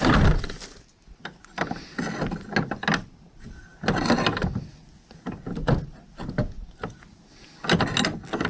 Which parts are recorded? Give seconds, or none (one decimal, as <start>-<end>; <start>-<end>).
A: 0.0-8.5